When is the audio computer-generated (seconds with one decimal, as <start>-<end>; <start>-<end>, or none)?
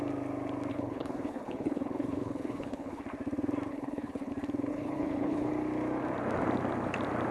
0.7-3.0; 3.7-4.3; 4.7-5.5